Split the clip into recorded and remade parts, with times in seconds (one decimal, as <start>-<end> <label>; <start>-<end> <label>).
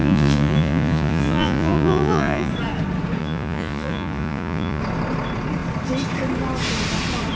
0.0-2.5 remade; 2.5-3.2 recorded; 3.2-4.8 remade; 4.8-7.4 recorded